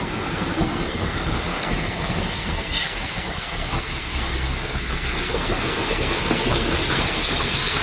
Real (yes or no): no